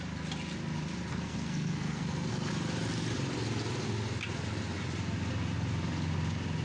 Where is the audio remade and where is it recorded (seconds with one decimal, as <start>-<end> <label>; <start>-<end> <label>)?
0.0-1.1 recorded; 1.1-2.5 remade; 2.5-6.6 recorded